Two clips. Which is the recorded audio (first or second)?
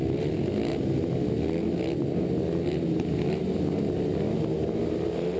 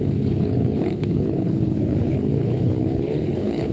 first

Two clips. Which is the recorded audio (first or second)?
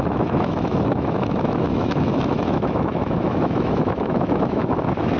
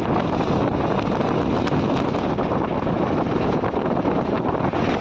second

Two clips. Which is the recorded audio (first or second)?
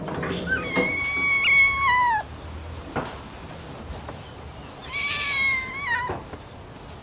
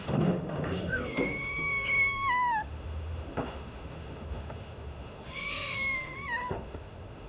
first